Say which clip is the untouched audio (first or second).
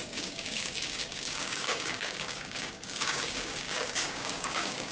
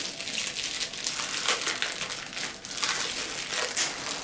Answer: second